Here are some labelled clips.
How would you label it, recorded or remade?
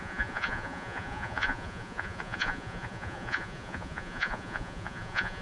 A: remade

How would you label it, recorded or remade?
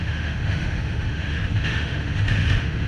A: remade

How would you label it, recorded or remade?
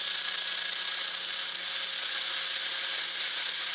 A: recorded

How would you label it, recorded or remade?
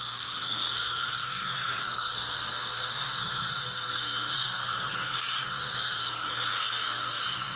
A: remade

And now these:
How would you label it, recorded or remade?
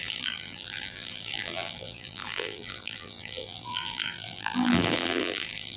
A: remade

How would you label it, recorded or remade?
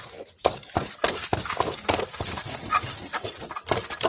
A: recorded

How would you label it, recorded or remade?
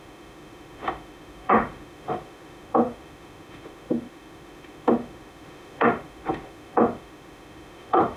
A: remade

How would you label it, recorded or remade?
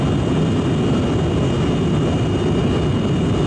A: recorded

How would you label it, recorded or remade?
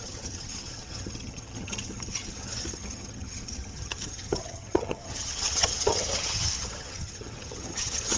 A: remade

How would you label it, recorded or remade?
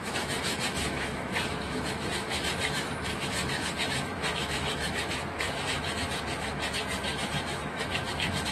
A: remade